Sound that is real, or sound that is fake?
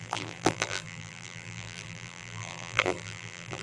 fake